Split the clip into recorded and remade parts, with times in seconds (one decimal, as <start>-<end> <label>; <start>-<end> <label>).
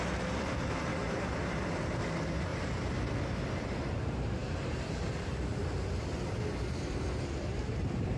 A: 0.0-0.9 remade; 0.9-1.5 recorded; 1.5-2.5 remade; 2.5-3.2 recorded; 3.2-5.6 remade; 5.6-6.7 recorded; 6.7-8.2 remade